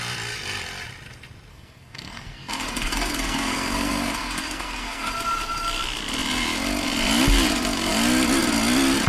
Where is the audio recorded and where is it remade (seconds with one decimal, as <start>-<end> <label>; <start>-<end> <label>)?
0.0-1.5 recorded; 1.5-5.1 remade; 5.1-9.1 recorded